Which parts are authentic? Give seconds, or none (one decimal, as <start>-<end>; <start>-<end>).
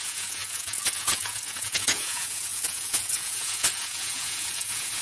none